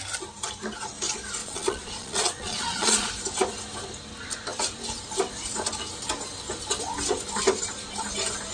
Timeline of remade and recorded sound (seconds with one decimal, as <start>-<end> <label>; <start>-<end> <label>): 0.0-1.4 recorded; 1.4-3.1 remade; 3.1-8.5 recorded